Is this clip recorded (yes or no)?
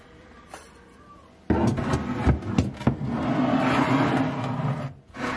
yes